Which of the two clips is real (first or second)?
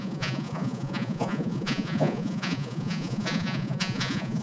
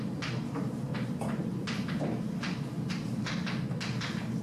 second